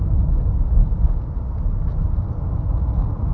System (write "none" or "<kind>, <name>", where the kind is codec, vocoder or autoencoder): none